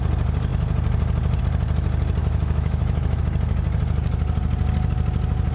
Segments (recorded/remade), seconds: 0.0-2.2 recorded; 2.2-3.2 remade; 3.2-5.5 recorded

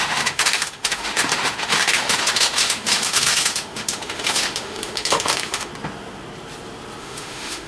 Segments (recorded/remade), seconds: 0.0-5.7 remade; 5.7-7.0 recorded; 7.0-7.7 remade

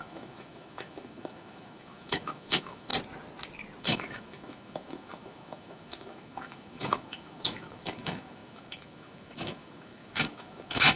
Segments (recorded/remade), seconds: 0.0-2.9 remade; 2.9-3.8 recorded; 3.8-11.0 remade

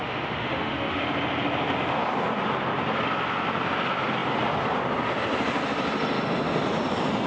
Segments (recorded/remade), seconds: 0.0-1.0 remade; 1.0-7.3 recorded

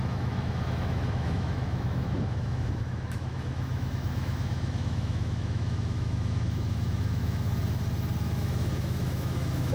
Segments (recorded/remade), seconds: 0.0-7.5 remade; 7.5-8.2 recorded; 8.2-9.7 remade